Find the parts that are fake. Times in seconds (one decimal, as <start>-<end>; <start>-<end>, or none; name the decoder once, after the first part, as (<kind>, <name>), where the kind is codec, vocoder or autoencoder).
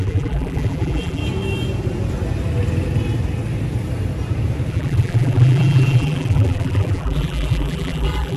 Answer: 0.0-1.2 (vocoder, BigVGAN v2); 4.7-8.4